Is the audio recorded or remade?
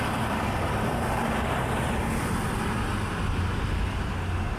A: remade